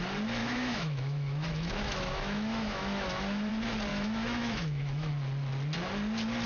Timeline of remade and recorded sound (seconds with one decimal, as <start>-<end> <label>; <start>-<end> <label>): 0.0-0.4 recorded; 0.4-3.5 remade; 3.5-3.9 recorded; 3.9-5.1 remade; 5.1-6.5 recorded